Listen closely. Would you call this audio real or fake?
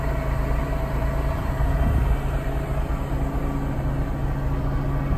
real